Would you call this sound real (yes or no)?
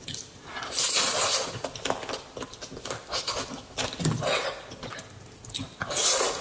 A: yes